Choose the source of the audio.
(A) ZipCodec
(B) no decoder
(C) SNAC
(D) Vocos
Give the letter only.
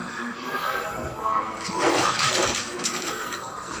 C